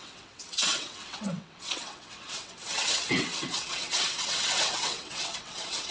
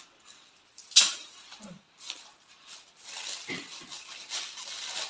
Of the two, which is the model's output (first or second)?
first